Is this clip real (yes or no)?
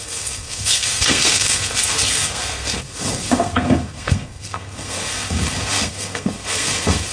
no